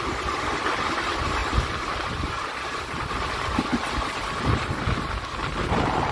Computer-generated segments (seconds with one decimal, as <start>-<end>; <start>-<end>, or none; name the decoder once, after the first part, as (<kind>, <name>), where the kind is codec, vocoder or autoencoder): 1.4-2.3 (vocoder, BigVGAN v2)